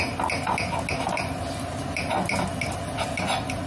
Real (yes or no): yes